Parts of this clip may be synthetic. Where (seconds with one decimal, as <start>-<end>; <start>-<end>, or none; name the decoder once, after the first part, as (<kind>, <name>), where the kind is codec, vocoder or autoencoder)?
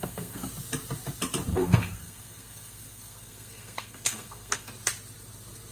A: 0.0-0.5 (codec, SNAC); 1.5-4.7